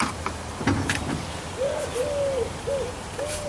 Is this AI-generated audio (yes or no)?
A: no